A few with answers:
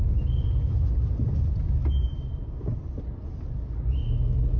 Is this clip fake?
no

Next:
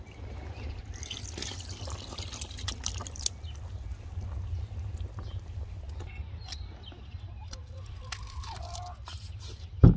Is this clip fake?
no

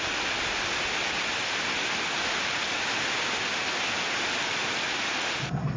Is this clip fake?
no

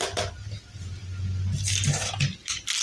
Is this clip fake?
no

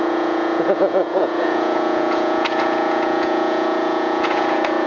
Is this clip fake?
yes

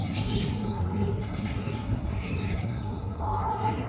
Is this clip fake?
yes